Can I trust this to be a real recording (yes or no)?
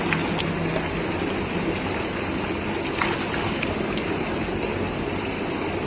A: yes